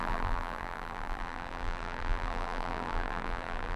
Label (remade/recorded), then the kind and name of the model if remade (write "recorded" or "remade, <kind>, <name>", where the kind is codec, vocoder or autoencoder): remade, vocoder, BigVGAN v2